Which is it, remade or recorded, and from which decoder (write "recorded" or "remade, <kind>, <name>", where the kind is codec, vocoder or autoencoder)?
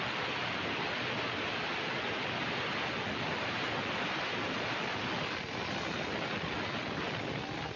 recorded